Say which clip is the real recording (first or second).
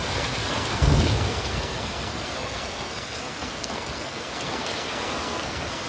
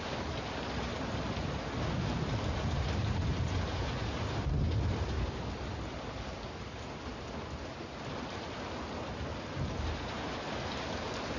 second